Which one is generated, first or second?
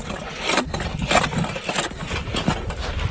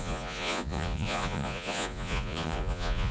second